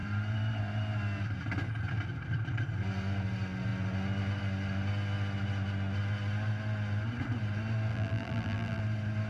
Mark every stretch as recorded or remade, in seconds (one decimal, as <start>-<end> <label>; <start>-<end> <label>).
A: 0.0-7.9 recorded; 7.9-8.8 remade; 8.8-9.3 recorded